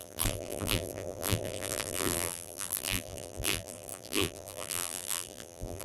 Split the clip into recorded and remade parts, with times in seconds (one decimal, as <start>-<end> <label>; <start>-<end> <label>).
0.0-5.8 remade